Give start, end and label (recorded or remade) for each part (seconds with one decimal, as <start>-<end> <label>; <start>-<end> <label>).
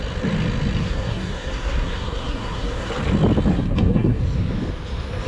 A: 0.0-0.8 recorded; 0.8-2.9 remade; 2.9-3.5 recorded; 3.5-4.2 remade; 4.2-5.3 recorded